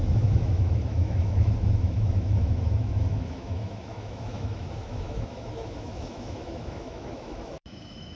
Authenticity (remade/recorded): remade